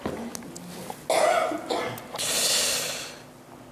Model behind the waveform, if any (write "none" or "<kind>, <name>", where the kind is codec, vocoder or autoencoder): none